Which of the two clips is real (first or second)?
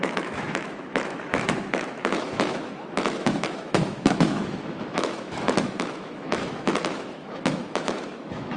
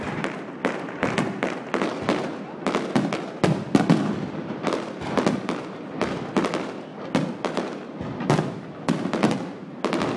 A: second